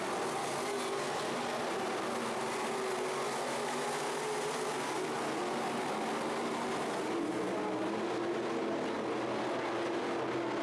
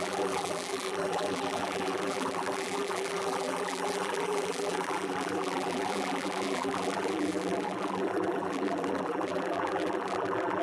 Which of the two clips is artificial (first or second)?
second